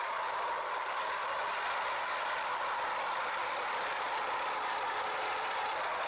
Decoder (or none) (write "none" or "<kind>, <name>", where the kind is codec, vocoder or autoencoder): none